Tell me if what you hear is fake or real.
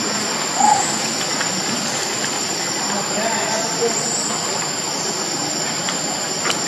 fake